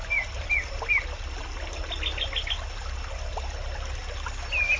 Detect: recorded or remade recorded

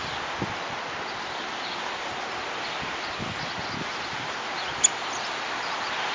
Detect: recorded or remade recorded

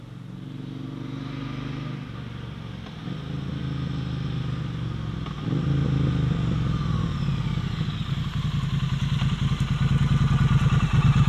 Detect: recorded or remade recorded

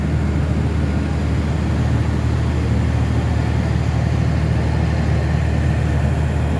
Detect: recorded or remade recorded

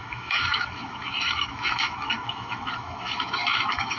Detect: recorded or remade remade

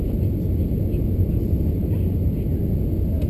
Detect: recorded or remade recorded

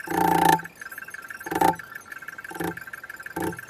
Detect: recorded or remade recorded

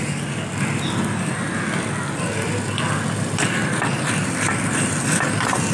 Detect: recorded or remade recorded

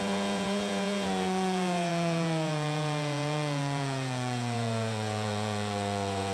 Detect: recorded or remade remade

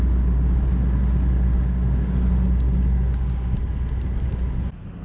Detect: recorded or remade recorded